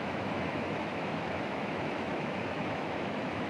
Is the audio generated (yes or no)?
yes